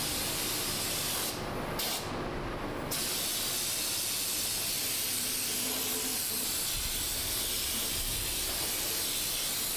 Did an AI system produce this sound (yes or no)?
no